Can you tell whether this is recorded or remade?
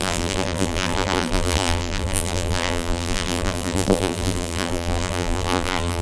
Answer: remade